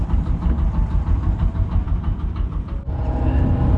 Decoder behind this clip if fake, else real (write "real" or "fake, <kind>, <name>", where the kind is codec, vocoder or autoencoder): real